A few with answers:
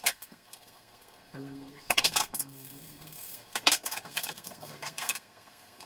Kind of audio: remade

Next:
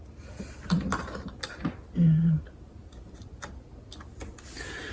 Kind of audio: recorded